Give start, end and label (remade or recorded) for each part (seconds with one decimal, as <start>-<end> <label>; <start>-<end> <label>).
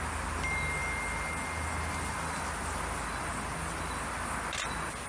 0.0-5.1 recorded